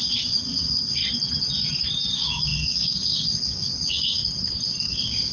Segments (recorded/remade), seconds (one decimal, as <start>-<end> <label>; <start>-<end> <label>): 0.0-1.0 remade; 1.0-2.1 recorded; 2.1-4.2 remade; 4.2-4.8 recorded; 4.8-5.3 remade